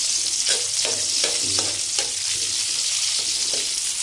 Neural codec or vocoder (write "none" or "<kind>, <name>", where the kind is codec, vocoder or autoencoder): none